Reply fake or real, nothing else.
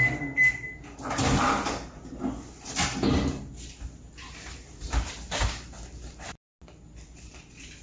real